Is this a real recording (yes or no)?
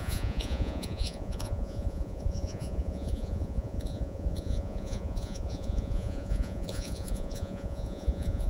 no